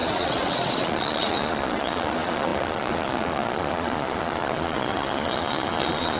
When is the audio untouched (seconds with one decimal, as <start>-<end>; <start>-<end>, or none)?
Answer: none